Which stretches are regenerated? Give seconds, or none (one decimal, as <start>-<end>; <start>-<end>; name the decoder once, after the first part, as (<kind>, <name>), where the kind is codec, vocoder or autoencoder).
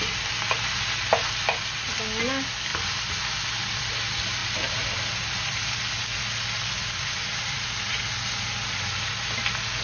4.4-5.8 (vocoder, BigVGAN v2); 7.3-8.0